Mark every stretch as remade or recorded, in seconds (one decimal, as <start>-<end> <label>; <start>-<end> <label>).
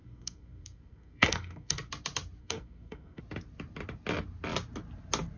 0.0-1.9 remade; 1.9-2.4 recorded; 2.4-3.2 remade; 3.2-5.4 recorded